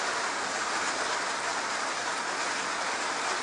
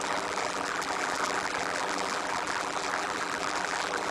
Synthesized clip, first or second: second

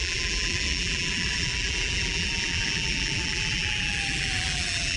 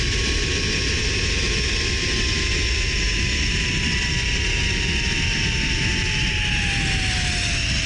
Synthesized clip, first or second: first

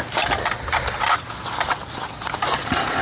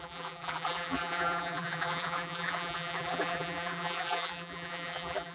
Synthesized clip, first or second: second